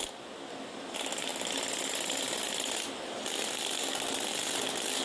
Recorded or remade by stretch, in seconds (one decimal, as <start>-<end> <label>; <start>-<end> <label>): 0.0-5.0 recorded